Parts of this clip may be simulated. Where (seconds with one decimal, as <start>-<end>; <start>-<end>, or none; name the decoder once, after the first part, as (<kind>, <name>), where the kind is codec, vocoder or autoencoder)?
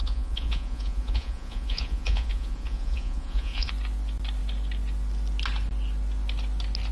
0.0-3.7 (vocoder, Vocos)